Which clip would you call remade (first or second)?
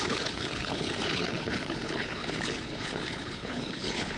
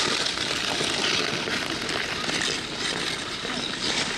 first